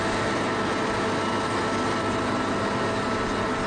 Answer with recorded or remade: recorded